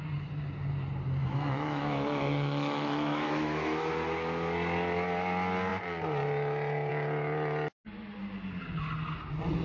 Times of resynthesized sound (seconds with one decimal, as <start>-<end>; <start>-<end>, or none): 1.2-3.9